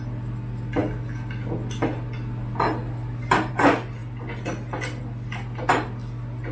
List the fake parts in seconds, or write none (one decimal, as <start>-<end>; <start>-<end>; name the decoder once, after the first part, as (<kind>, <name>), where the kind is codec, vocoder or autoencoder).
none